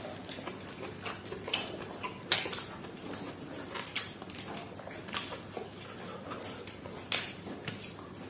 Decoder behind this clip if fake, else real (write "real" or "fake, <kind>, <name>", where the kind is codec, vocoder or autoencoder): real